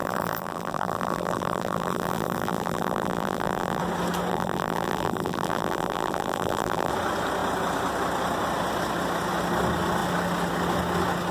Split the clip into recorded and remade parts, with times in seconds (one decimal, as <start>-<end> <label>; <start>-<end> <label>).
0.0-3.8 remade; 3.8-4.3 recorded; 4.3-6.9 remade; 6.9-11.3 recorded